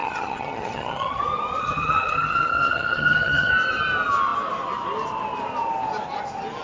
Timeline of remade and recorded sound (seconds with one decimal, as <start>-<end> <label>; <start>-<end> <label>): 0.0-1.2 remade; 1.2-1.6 recorded; 1.6-3.5 remade; 3.5-6.6 recorded